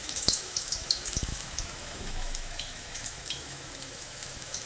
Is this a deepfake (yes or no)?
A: yes